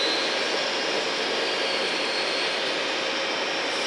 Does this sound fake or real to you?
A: real